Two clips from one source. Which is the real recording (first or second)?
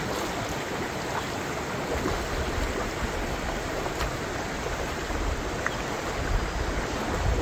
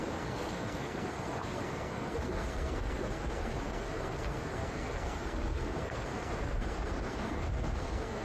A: first